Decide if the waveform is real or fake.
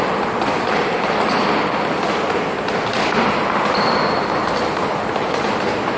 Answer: real